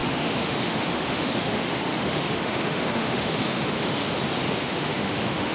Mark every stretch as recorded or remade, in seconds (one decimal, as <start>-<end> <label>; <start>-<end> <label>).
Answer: 0.0-4.0 remade; 4.0-4.6 recorded; 4.6-5.5 remade